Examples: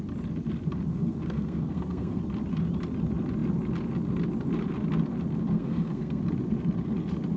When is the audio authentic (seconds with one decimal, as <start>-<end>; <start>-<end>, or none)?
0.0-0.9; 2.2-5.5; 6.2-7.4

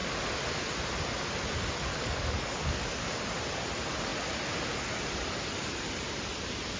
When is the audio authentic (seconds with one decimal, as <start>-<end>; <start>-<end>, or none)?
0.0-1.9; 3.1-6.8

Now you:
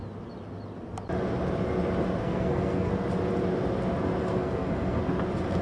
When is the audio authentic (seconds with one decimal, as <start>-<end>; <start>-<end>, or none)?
0.0-2.2; 2.9-4.2; 5.0-5.6

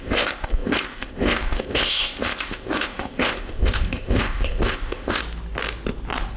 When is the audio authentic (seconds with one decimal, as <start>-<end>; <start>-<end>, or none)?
5.2-6.4

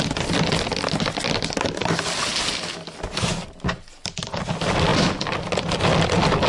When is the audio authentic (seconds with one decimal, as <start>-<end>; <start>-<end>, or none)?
0.0-6.5

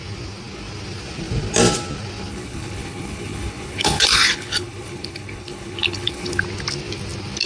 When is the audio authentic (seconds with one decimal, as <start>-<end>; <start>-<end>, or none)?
0.0-2.3; 6.4-7.5

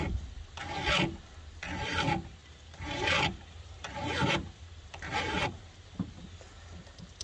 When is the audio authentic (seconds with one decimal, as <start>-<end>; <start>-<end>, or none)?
0.0-2.4; 6.1-7.2